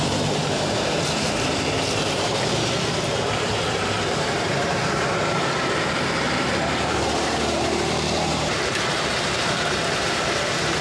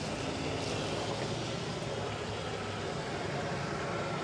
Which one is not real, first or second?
first